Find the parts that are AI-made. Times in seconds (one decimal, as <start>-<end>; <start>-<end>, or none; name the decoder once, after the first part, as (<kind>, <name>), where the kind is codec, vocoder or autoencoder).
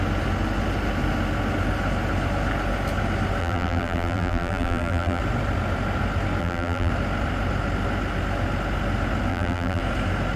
3.4-5.2 (vocoder, BigVGAN v2); 6.4-6.9; 9.3-9.8